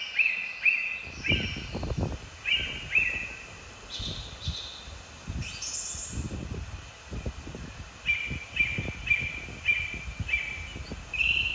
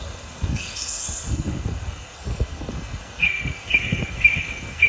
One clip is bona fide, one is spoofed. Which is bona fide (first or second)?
first